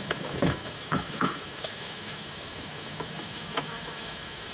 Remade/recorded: remade